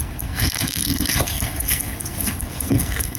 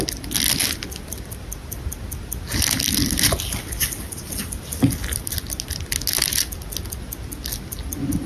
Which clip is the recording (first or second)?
second